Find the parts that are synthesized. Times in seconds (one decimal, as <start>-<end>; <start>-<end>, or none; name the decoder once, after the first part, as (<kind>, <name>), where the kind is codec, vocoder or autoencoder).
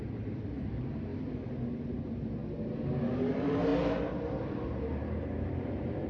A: 0.0-1.1 (vocoder, BigVGAN v2); 1.9-2.4; 3.0-3.7; 4.4-6.1